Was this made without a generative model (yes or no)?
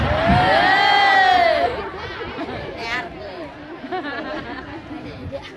yes